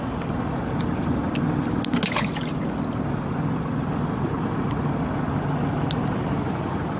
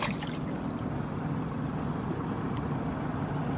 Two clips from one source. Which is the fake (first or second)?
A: second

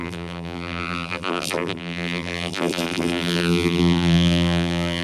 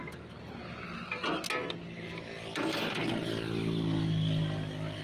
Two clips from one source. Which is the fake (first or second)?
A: first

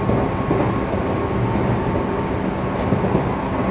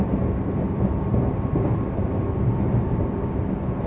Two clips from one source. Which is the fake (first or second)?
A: second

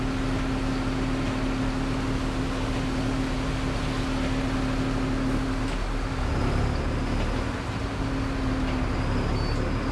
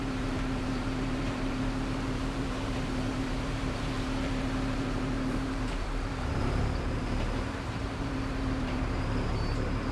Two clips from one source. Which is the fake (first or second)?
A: second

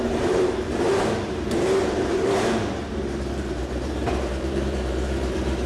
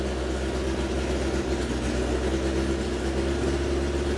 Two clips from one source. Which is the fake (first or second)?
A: first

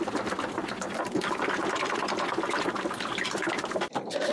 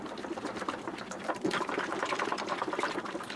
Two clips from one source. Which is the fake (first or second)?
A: second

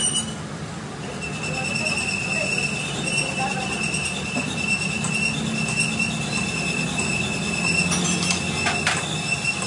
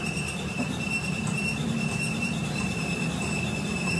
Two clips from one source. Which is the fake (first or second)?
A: second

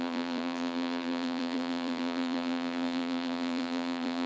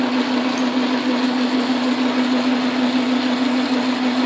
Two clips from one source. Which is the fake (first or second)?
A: first